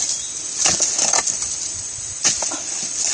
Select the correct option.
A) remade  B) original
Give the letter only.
B